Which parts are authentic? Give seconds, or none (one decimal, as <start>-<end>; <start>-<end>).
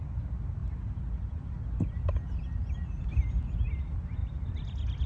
0.0-5.1